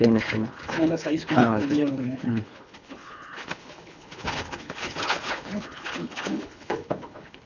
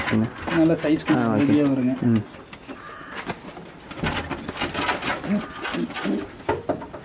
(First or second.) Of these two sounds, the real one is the second